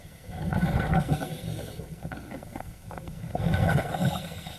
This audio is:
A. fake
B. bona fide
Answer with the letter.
A